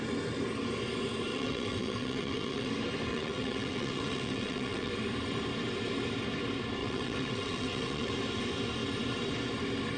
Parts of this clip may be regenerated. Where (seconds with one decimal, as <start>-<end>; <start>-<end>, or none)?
1.3-2.7; 3.1-4.9; 6.8-8.1